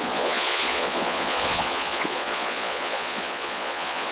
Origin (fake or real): fake